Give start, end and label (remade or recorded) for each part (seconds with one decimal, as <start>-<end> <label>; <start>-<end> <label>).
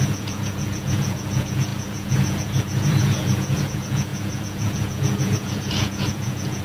0.0-6.6 remade